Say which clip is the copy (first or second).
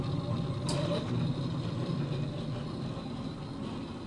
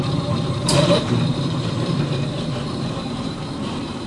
second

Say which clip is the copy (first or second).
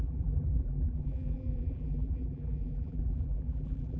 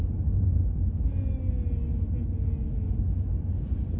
first